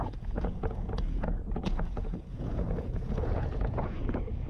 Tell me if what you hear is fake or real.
fake